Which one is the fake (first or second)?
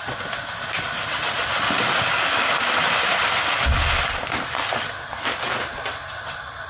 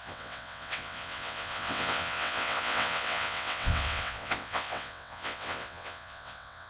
second